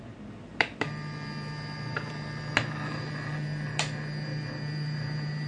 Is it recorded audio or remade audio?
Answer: remade